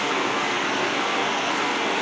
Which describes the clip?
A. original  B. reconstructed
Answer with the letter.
B